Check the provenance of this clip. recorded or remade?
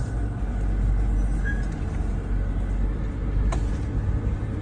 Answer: recorded